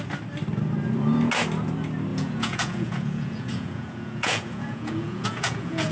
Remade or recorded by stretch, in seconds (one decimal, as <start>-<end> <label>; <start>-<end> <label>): 0.0-2.1 recorded; 2.1-5.9 remade